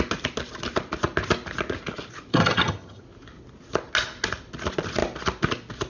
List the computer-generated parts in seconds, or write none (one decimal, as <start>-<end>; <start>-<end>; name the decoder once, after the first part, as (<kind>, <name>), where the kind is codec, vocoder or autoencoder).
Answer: 2.3-3.0 (vocoder, HiFi-GAN)